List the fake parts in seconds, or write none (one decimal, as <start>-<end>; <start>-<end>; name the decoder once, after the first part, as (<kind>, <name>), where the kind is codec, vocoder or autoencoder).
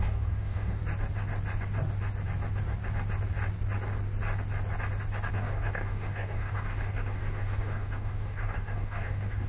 0.0-0.8 (codec, DAC); 5.3-9.5